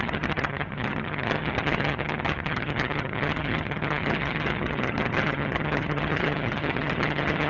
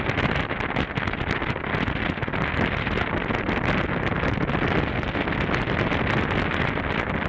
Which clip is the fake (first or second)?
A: first